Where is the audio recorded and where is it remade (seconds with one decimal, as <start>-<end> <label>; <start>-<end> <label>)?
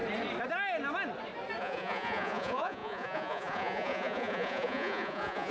0.0-1.6 recorded; 1.6-5.5 remade